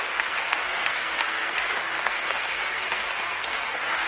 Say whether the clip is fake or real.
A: fake